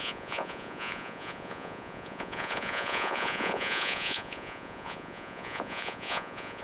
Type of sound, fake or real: fake